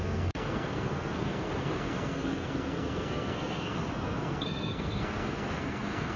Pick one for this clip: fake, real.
fake